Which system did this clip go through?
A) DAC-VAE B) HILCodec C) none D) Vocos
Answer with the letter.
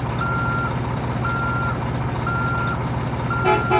C